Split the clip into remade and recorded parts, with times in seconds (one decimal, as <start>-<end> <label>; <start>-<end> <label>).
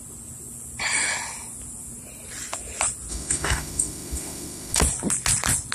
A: 0.0-3.1 recorded; 3.1-4.8 remade; 4.8-5.7 recorded